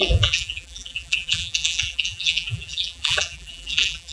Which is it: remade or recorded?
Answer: remade